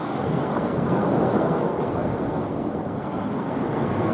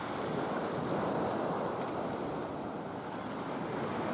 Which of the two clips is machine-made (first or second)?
first